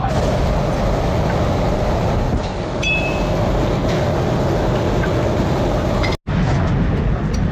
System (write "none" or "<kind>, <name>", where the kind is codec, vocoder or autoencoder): none